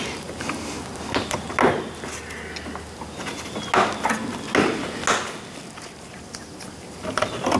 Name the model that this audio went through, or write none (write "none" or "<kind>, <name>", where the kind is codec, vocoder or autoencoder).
none